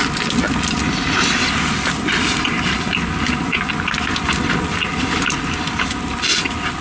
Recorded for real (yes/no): yes